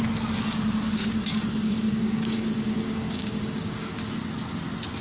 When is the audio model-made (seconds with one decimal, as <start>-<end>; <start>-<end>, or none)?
1.0-4.0

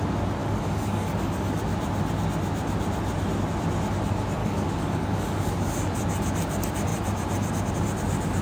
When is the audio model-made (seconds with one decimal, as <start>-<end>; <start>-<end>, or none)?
0.4-1.6; 4.4-5.5

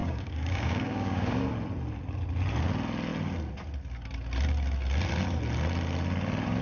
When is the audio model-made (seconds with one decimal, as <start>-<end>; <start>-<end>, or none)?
0.0-1.5

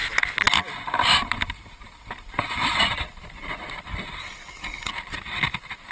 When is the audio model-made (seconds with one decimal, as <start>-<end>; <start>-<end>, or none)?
4.2-4.9